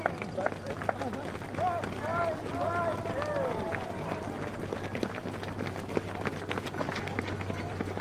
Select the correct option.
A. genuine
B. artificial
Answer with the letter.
A